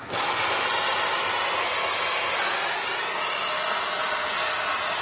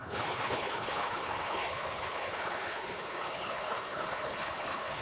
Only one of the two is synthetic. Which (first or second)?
second